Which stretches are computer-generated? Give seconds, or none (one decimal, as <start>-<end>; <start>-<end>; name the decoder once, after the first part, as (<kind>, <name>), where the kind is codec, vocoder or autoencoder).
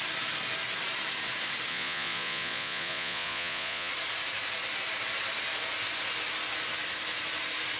1.7-3.9 (vocoder, Vocos)